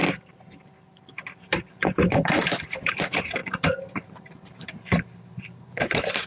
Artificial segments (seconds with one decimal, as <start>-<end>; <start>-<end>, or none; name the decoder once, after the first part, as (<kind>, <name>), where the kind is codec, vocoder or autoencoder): 1.8-3.4 (vocoder, BigVGAN v2); 3.9-6.3